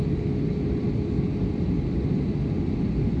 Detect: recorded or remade recorded